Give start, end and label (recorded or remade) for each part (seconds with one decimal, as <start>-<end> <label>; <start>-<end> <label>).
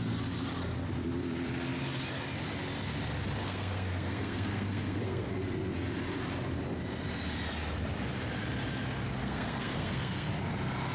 0.0-3.4 recorded; 3.4-5.3 remade; 5.3-9.2 recorded; 9.2-10.3 remade; 10.3-10.9 recorded